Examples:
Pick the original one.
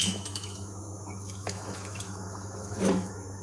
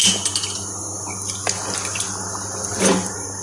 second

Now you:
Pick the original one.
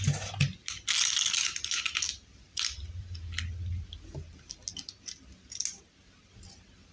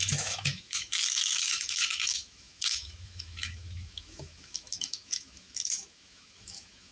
first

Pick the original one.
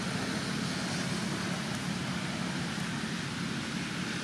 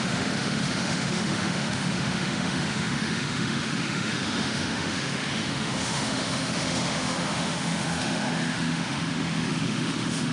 first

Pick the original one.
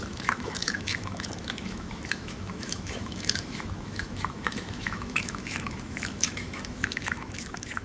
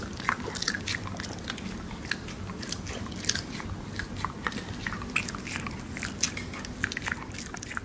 second